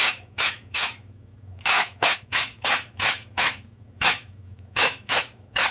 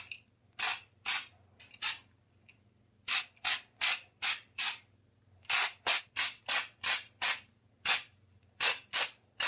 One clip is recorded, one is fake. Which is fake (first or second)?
first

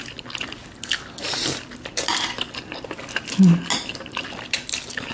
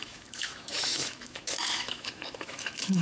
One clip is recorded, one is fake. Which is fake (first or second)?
second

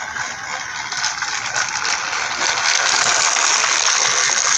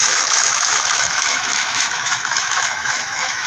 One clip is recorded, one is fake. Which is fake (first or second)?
second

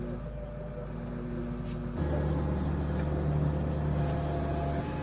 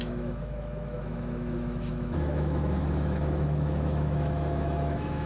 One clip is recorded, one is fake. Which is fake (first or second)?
second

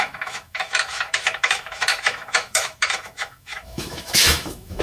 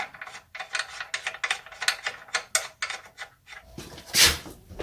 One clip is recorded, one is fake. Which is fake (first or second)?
first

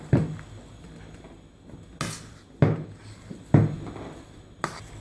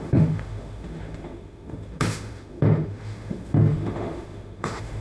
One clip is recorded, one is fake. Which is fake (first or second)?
second